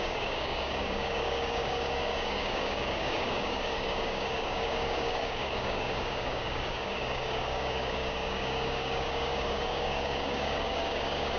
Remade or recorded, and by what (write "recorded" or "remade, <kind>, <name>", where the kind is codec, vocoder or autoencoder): remade, codec, DAC